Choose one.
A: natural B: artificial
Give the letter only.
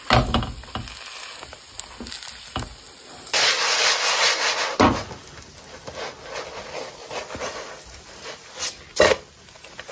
A